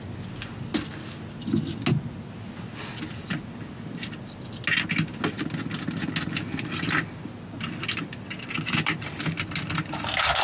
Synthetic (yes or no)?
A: no